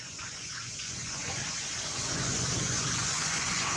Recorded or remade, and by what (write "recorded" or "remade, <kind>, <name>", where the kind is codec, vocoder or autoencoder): remade, vocoder, Vocos